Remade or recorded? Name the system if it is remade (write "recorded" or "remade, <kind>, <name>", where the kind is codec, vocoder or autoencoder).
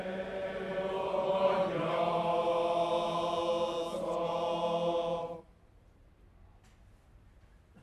recorded